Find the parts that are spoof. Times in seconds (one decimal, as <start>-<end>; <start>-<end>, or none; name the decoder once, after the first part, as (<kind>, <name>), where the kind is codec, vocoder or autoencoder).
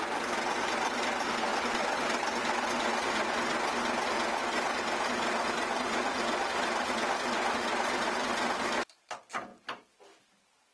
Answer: 5.6-7.7 (vocoder, BigVGAN v2)